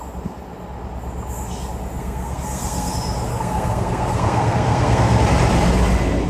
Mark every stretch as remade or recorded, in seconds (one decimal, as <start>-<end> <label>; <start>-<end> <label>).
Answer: 0.0-2.0 recorded; 2.0-2.9 remade; 2.9-3.3 recorded; 3.3-5.2 remade; 5.2-6.3 recorded